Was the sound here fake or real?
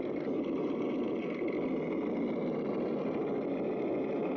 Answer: real